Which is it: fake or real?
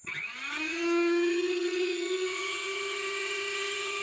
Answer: fake